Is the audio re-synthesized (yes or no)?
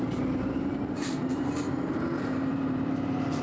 yes